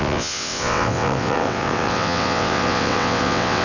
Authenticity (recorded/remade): remade